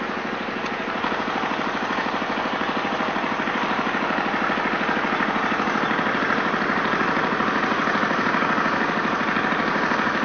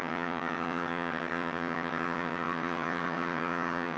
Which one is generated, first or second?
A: second